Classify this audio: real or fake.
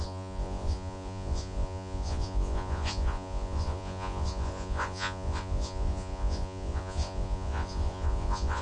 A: fake